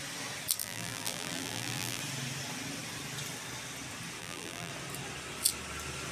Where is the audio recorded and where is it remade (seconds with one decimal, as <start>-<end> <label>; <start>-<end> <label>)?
0.0-0.6 recorded; 0.6-2.0 remade; 2.0-4.2 recorded; 4.2-4.7 remade; 4.7-6.1 recorded

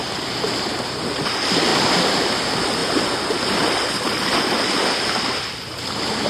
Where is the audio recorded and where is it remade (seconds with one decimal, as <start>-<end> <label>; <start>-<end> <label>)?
0.0-2.8 remade; 2.8-3.5 recorded; 3.5-6.3 remade

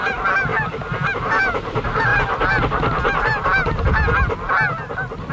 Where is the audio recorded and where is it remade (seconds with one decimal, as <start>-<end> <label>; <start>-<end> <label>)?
0.0-0.5 recorded; 0.5-1.2 remade; 1.2-5.3 recorded

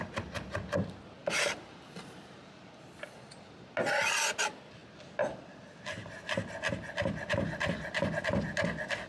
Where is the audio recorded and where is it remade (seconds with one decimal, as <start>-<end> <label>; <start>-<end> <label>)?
0.0-1.2 recorded; 1.2-2.7 remade; 2.7-9.1 recorded

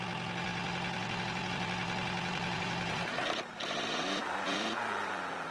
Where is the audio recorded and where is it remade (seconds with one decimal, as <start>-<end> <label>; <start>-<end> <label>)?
0.0-2.3 recorded; 2.3-5.1 remade; 5.1-5.5 recorded

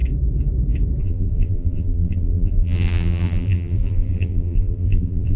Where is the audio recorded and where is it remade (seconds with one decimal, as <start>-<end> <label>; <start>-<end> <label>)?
0.0-1.0 recorded; 1.0-5.4 remade

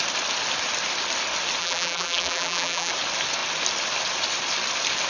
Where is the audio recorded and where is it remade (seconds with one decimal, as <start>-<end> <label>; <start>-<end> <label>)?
0.0-1.6 recorded; 1.6-2.9 remade; 2.9-5.1 recorded

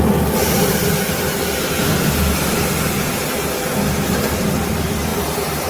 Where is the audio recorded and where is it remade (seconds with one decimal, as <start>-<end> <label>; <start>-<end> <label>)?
0.0-5.7 remade